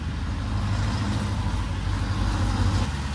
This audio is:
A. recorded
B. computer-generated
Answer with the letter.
A